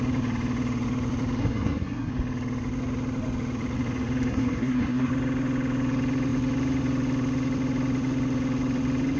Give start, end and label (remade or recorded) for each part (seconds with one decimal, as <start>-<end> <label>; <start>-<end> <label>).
0.0-1.4 recorded; 1.4-2.1 remade; 2.1-4.3 recorded; 4.3-5.1 remade; 5.1-9.2 recorded